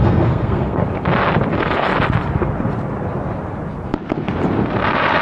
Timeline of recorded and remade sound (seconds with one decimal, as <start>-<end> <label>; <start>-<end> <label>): 0.0-0.8 remade; 0.8-1.5 recorded; 1.5-1.9 remade; 1.9-5.2 recorded